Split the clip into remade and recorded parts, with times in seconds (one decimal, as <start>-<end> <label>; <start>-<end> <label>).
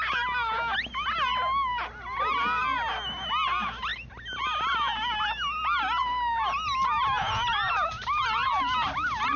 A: 0.0-9.4 recorded